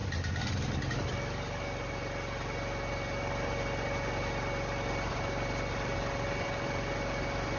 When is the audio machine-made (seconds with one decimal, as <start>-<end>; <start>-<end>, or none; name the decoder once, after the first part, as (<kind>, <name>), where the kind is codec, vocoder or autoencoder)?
none